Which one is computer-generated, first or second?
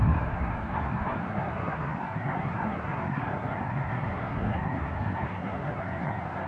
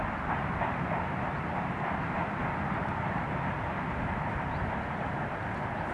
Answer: first